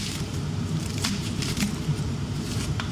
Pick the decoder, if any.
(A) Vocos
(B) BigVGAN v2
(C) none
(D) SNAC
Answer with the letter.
B